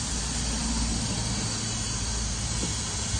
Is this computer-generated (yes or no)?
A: no